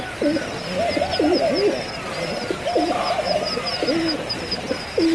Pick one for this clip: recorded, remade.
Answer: recorded